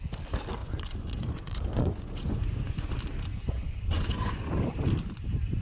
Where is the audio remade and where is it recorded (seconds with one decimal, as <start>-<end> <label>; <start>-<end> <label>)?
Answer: 0.0-0.6 recorded; 0.6-2.9 remade; 2.9-3.3 recorded; 3.3-4.5 remade; 4.5-5.6 recorded